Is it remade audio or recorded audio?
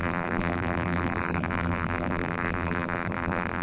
remade